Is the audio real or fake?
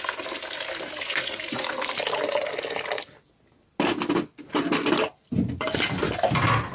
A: real